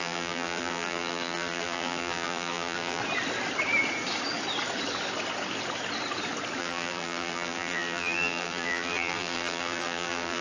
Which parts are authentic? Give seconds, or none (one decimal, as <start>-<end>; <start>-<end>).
3.0-6.6